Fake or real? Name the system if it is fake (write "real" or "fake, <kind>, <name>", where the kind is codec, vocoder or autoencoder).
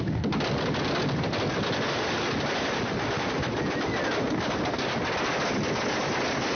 real